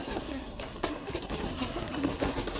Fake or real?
fake